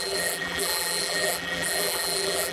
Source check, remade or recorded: remade